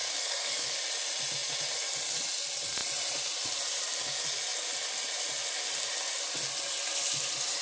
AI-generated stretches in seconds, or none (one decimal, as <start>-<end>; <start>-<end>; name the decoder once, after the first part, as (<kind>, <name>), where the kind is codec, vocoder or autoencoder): 0.0-0.7 (codec, SNAC)